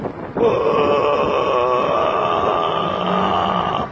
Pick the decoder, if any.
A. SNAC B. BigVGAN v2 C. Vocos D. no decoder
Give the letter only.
D